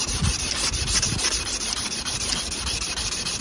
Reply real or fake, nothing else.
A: real